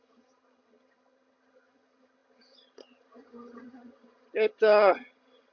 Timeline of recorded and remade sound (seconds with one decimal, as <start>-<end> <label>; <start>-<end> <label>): 0.0-5.5 remade